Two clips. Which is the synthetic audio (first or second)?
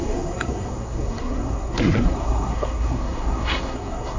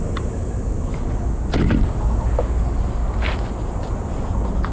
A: first